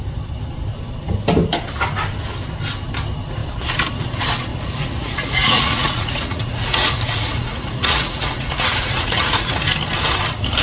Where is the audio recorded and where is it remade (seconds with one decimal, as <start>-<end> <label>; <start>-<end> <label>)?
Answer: 0.0-4.5 recorded; 4.5-9.6 remade; 9.6-10.6 recorded